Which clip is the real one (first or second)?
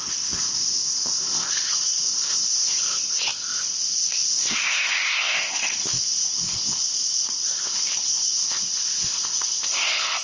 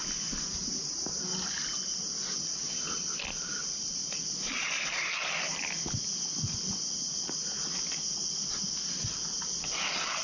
second